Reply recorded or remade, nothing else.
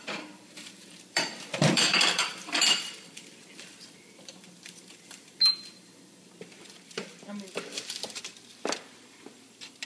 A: remade